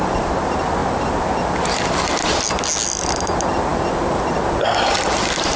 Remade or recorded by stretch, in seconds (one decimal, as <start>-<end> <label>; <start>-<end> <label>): 0.0-5.6 recorded